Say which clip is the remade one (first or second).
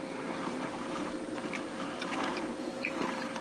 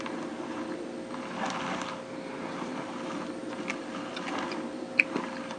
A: first